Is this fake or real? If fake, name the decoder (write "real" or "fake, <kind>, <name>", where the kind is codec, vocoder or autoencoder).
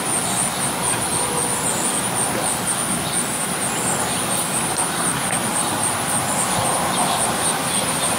real